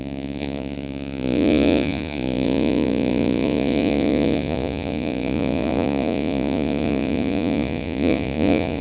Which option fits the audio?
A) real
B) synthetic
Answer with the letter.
B